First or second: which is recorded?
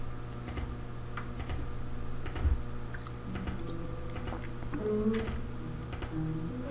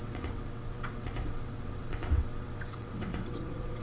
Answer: first